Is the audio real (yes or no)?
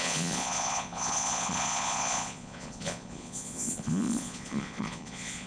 no